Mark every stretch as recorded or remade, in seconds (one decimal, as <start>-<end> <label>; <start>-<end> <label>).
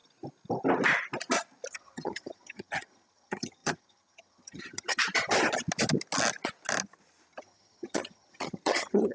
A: 0.0-1.7 recorded; 1.7-5.0 remade; 5.0-7.4 recorded; 7.4-9.1 remade